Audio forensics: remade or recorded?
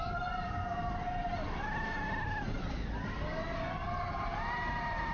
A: recorded